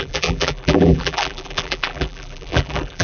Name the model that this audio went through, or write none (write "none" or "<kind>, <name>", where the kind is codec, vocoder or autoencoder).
vocoder, BigVGAN v2